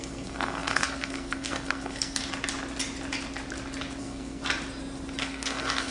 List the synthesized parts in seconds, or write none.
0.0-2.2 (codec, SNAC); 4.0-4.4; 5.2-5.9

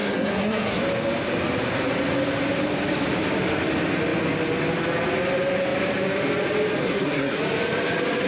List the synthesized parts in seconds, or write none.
0.0-0.8 (codec, SNAC); 6.8-7.4